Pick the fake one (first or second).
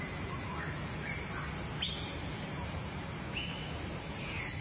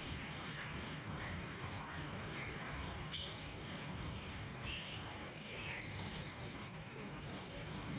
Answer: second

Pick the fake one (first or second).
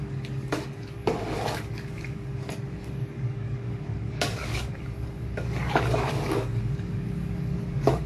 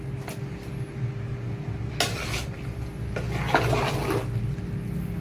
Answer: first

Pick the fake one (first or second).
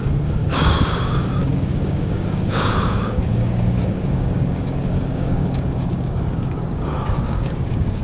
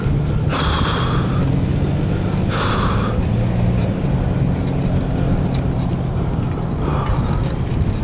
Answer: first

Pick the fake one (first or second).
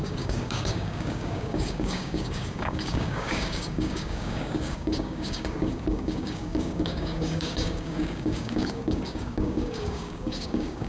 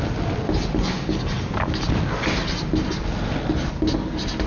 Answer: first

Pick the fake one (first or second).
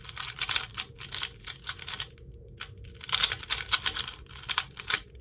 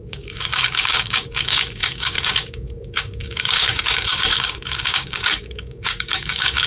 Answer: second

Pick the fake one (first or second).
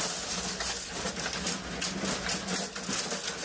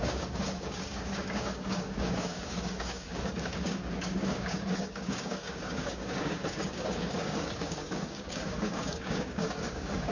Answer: second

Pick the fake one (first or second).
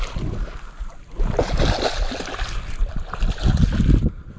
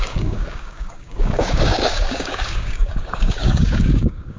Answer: second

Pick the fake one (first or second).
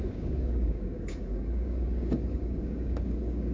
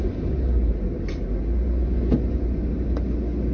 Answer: first